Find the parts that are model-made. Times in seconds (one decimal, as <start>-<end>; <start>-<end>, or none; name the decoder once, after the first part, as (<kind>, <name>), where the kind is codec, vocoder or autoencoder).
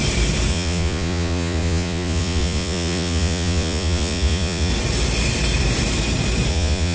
0.5-4.7 (vocoder, Vocos); 6.5-6.9